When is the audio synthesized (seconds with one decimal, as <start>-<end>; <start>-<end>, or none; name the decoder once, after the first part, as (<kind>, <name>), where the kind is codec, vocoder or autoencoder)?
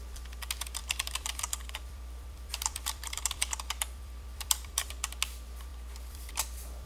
0.8-4.9 (vocoder, BigVGAN v2); 5.7-6.3